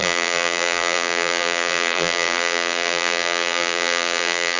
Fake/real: fake